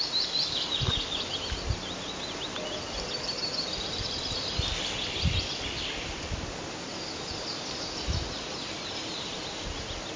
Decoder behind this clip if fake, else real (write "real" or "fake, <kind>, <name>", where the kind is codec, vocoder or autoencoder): real